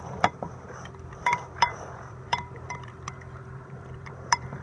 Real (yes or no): no